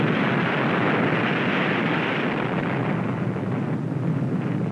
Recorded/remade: recorded